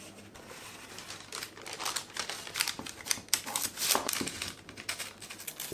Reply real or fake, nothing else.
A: real